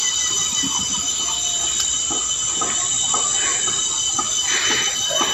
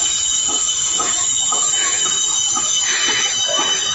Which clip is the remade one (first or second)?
second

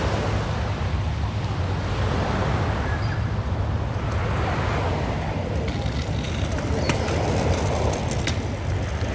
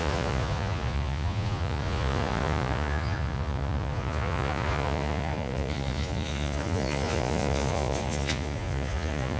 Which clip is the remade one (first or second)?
second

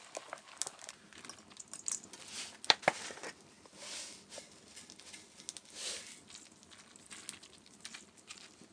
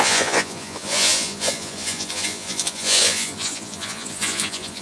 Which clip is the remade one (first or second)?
second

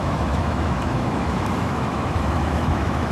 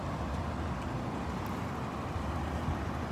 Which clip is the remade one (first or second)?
first